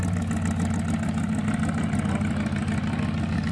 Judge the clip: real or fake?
real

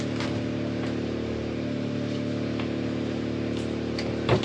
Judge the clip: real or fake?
real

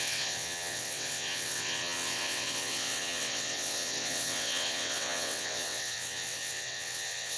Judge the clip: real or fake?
fake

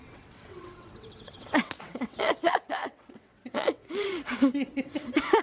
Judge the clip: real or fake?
fake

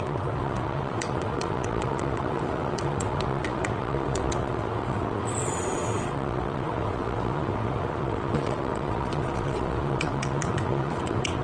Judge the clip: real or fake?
fake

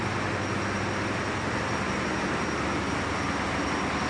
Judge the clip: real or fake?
real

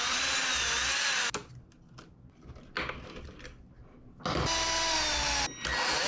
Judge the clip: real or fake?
real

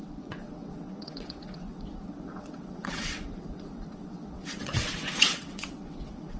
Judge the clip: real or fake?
fake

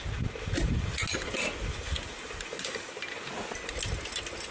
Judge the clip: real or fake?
real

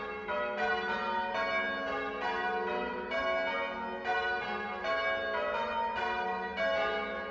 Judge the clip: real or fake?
real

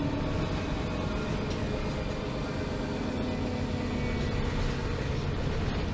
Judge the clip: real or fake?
real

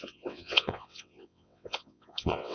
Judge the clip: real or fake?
fake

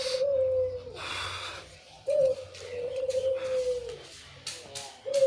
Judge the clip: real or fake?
real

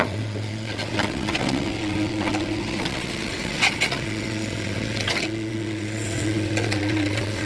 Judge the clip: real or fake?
fake